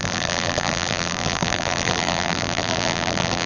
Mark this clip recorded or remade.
remade